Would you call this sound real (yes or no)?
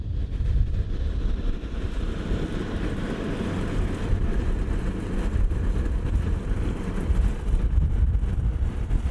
no